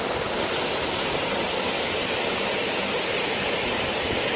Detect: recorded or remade recorded